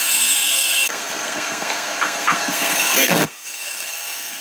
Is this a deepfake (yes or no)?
yes